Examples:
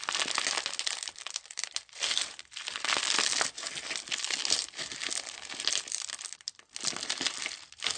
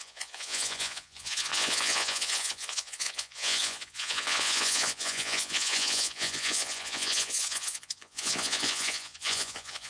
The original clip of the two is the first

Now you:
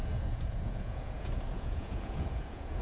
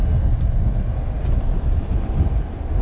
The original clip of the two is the second